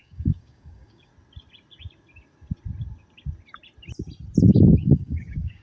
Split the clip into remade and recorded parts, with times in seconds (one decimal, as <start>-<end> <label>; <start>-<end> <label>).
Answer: 0.0-1.1 remade; 1.1-4.5 recorded; 4.5-5.6 remade